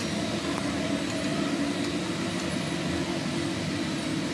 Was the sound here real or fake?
real